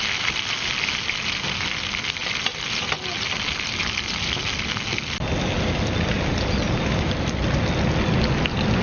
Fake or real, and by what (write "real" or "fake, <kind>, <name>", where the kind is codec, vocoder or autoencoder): real